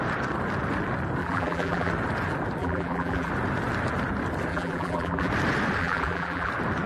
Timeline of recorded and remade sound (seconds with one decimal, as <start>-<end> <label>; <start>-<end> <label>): 0.0-1.2 recorded; 1.2-1.9 remade; 1.9-2.6 recorded; 2.6-3.3 remade; 3.3-4.5 recorded; 4.5-5.3 remade; 5.3-5.8 recorded; 5.8-6.5 remade; 6.5-6.9 recorded